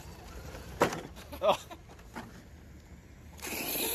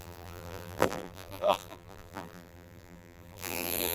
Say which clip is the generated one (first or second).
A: second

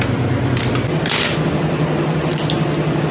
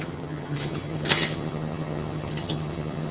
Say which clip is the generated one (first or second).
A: second